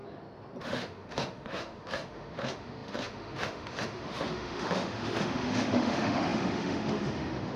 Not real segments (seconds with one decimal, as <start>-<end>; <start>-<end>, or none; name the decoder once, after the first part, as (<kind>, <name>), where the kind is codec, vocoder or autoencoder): 0.6-7.6 (autoencoder, DAC-VAE)